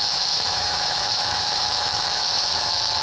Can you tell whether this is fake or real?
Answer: fake